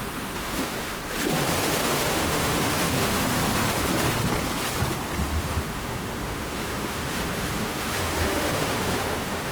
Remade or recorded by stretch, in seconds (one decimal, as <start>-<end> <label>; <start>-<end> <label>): 0.0-1.0 remade; 1.0-1.6 recorded; 1.6-3.4 remade; 3.4-5.4 recorded; 5.4-9.5 remade